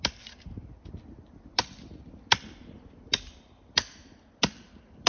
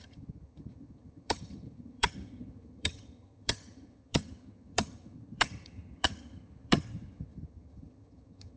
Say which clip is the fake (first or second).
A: second